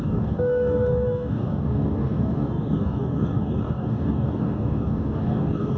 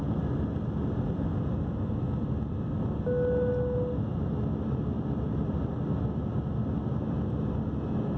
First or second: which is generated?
first